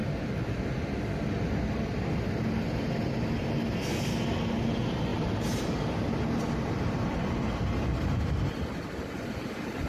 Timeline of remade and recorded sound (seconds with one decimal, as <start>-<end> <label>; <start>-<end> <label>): 0.0-5.1 recorded; 5.1-9.9 remade